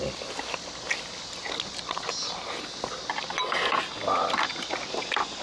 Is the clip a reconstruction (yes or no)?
no